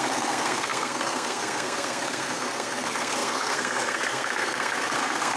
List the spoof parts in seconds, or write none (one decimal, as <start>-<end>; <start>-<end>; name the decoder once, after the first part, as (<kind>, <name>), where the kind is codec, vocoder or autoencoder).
0.0-5.4 (codec, SNAC)